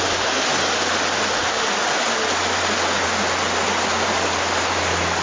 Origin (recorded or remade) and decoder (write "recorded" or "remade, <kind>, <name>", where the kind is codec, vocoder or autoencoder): recorded